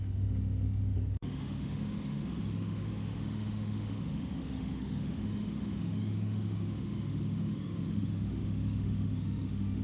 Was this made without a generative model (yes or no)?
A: no